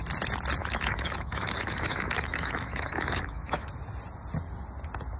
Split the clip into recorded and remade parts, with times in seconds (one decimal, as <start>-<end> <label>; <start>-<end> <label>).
0.0-0.6 recorded; 0.6-3.7 remade; 3.7-5.2 recorded